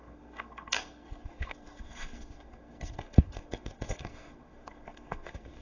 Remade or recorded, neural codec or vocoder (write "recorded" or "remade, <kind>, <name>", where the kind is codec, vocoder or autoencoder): remade, codec, SNAC